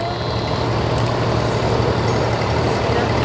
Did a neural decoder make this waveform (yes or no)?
no